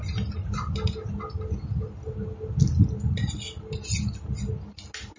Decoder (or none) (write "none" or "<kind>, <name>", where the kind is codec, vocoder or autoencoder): none